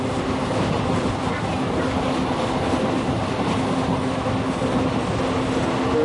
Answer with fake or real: real